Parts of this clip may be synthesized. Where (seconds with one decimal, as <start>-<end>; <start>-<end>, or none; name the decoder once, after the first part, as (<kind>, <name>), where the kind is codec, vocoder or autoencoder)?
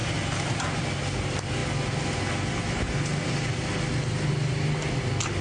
none